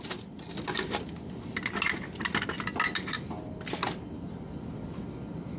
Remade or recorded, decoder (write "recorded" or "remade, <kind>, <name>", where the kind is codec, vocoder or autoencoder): recorded